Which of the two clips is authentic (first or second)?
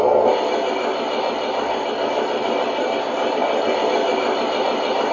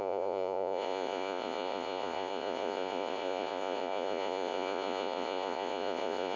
first